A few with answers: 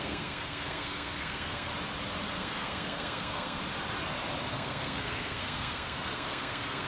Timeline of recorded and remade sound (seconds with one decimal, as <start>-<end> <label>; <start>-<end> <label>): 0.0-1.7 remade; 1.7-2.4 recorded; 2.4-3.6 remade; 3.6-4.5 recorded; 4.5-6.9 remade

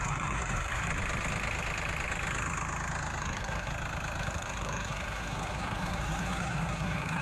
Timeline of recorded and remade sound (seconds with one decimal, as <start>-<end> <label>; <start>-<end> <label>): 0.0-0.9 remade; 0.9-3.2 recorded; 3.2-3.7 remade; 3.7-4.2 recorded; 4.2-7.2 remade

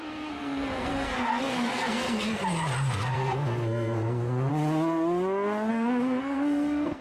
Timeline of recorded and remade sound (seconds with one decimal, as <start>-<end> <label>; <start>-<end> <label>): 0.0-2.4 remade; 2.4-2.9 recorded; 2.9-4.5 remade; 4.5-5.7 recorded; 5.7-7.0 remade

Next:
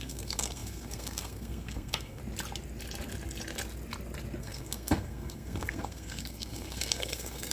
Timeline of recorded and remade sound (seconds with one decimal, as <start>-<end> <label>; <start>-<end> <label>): 0.0-2.2 remade; 2.2-4.4 recorded; 4.4-7.5 remade

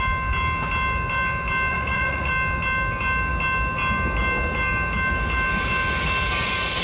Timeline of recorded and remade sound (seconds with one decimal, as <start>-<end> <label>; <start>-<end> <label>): 0.0-1.7 recorded; 1.7-2.3 remade; 2.3-6.8 recorded

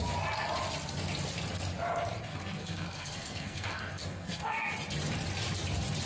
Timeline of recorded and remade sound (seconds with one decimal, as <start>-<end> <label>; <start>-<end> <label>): 0.0-2.3 recorded; 2.3-4.7 remade; 4.7-6.1 recorded

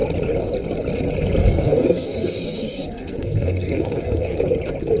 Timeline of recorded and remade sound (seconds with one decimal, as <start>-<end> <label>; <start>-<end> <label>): 0.0-1.4 recorded; 1.4-4.4 remade; 4.4-5.0 recorded

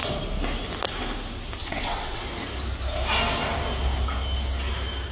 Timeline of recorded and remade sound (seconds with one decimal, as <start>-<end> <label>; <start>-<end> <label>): 0.0-1.6 recorded; 1.6-2.2 remade; 2.2-5.1 recorded